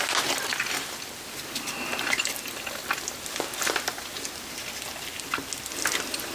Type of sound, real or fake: real